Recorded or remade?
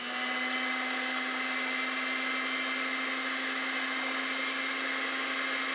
recorded